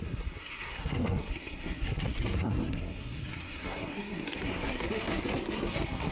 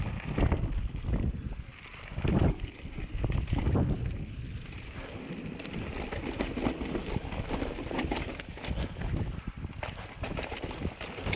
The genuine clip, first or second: second